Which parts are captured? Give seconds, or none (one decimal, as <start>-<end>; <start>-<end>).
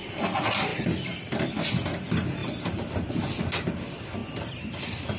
0.0-5.2